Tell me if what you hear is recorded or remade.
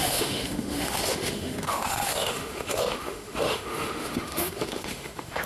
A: remade